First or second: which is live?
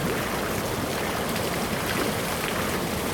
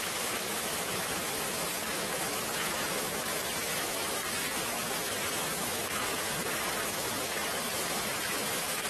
first